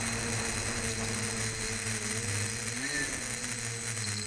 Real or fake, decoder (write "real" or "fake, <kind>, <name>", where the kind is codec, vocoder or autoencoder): real